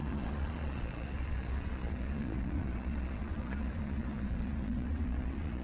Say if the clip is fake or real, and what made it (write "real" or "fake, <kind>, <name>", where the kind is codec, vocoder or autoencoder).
fake, vocoder, Vocos